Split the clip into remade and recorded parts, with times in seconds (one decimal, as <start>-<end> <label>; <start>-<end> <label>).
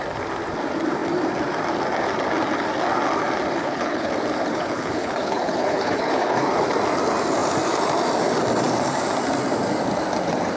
0.0-3.6 recorded; 3.6-4.1 remade; 4.1-4.5 recorded; 4.5-6.5 remade; 6.5-10.6 recorded